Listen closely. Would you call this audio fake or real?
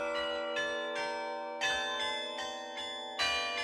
real